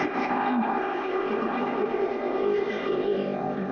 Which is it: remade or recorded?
remade